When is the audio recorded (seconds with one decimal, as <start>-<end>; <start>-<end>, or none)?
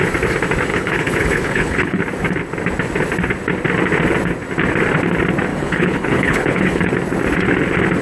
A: 0.0-0.7; 2.0-5.5; 6.9-8.0